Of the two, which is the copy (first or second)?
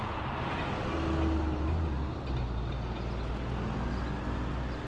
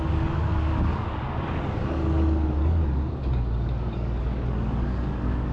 second